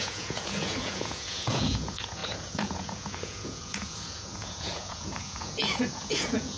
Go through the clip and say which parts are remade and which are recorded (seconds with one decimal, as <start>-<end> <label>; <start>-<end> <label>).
0.0-6.6 remade